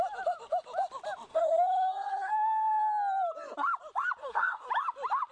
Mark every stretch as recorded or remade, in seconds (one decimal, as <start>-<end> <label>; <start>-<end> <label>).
0.0-1.3 recorded; 1.3-2.3 remade; 2.3-4.2 recorded; 4.2-4.7 remade; 4.7-5.3 recorded